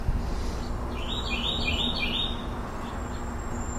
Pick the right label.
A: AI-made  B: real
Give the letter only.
B